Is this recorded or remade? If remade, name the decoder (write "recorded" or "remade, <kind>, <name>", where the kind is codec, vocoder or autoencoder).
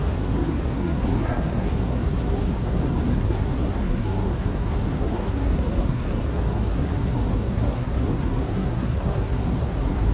remade, codec, SNAC